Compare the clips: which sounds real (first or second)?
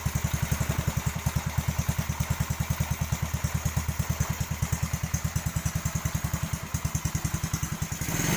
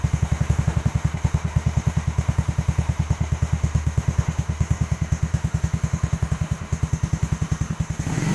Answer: first